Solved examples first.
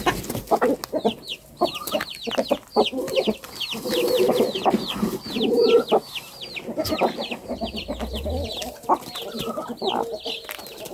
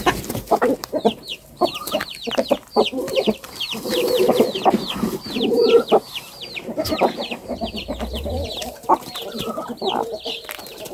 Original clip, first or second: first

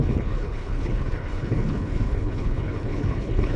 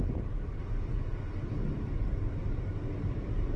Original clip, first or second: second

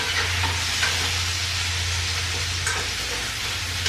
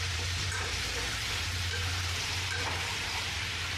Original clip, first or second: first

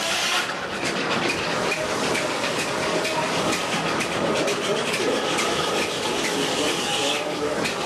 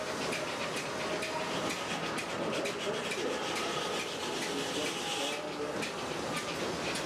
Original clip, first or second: second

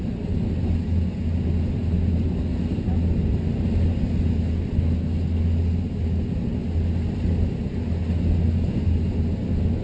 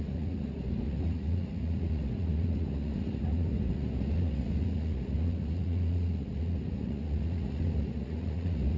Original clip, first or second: first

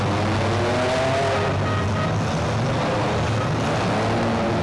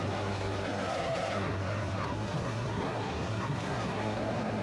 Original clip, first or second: first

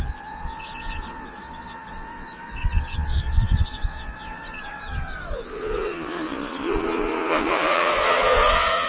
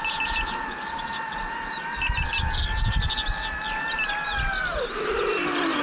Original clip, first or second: second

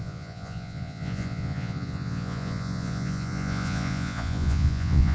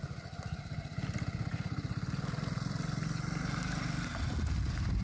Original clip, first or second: second